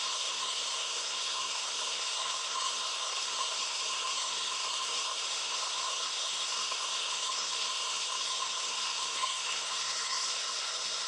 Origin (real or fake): fake